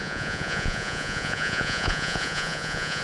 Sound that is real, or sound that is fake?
fake